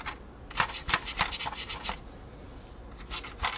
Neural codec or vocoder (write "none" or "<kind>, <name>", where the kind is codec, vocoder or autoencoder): none